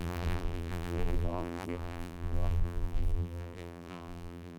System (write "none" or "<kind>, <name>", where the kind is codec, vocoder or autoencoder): vocoder, BigVGAN v2